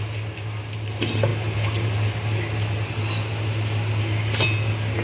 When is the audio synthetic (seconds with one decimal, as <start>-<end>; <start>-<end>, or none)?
none